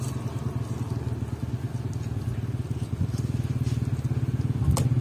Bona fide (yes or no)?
yes